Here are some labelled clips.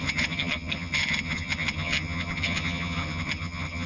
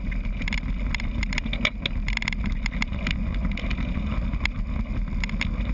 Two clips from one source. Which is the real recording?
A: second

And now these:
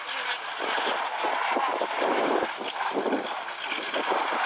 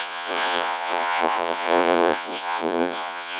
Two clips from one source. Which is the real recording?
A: first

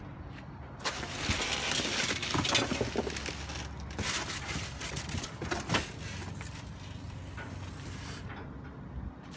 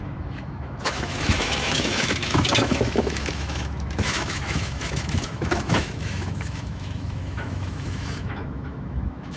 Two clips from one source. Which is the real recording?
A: first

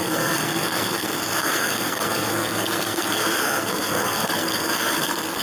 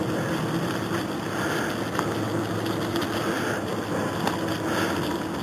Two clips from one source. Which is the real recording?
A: second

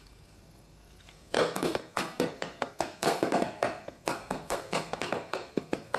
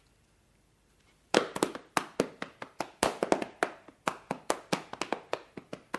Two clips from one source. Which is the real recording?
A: second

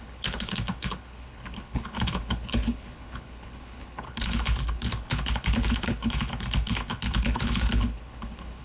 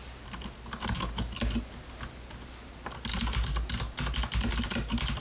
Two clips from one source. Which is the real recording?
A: second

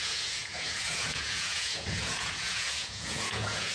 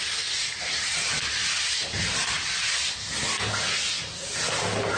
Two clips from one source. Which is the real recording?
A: second